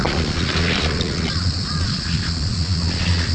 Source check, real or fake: fake